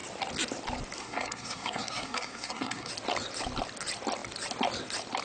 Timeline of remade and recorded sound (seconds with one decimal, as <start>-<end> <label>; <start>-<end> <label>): 0.0-1.0 recorded; 1.0-2.9 remade; 2.9-5.2 recorded